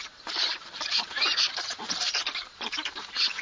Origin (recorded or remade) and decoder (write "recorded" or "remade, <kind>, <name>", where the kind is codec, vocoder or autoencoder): remade, vocoder, BigVGAN v2